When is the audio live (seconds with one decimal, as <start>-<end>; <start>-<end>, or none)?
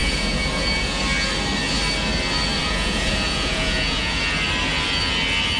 1.0-2.6; 4.2-5.6